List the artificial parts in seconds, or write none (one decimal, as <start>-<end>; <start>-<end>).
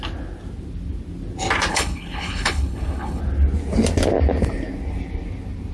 1.7-3.2